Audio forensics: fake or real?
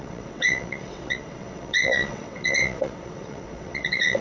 fake